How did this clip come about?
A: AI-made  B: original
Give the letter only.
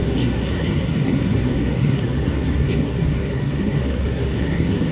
A